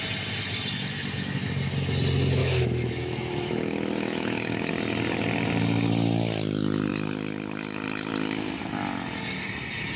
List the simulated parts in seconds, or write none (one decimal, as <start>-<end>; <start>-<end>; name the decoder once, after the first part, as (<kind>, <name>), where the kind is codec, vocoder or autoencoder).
2.4-4.7 (autoencoder, DAC-VAE)